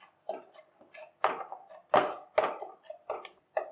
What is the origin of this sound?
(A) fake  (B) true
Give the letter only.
B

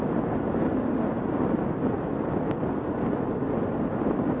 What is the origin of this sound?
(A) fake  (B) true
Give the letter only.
B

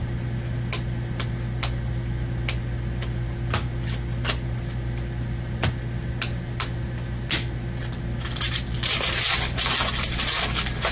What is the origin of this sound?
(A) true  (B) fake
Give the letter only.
A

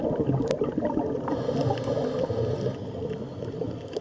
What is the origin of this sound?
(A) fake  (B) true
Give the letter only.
B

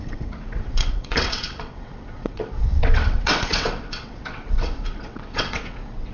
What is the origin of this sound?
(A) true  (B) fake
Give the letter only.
B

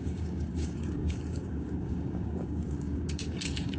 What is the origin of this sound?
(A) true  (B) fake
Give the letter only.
B